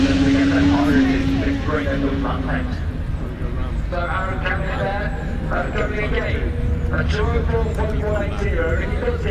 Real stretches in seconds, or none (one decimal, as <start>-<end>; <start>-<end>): 0.0-9.3

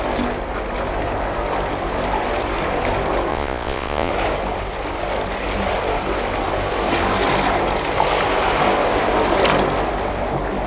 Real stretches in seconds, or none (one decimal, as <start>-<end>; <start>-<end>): 0.0-3.3; 4.1-10.7